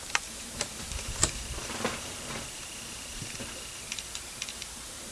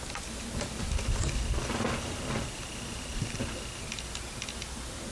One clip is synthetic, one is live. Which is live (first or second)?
second